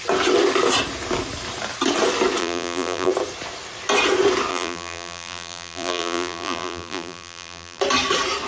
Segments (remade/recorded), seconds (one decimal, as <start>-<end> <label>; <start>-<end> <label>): 0.0-2.4 recorded; 2.4-3.1 remade; 3.1-4.5 recorded; 4.5-7.8 remade; 7.8-8.5 recorded